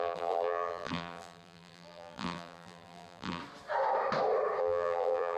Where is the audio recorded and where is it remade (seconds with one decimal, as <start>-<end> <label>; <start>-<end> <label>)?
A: 0.0-3.4 remade; 3.4-4.6 recorded; 4.6-5.4 remade